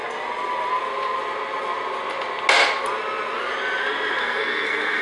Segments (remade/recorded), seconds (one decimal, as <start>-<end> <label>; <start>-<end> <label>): 0.0-4.2 recorded; 4.2-5.0 remade